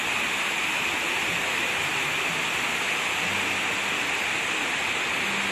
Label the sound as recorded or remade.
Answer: recorded